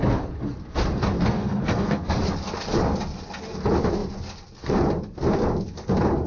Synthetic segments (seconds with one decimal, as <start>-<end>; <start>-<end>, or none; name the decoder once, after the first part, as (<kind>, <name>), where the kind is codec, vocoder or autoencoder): 1.1-2.2 (codec, SNAC)